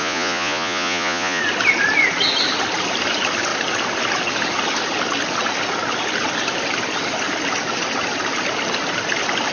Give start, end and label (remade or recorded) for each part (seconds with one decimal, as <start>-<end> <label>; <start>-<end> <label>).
0.0-1.4 remade; 1.4-9.5 recorded